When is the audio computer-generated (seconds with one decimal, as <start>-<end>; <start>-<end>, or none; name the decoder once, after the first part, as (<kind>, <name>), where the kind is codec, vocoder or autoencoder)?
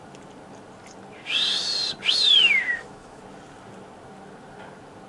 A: 2.4-3.2 (autoencoder, DAC-VAE)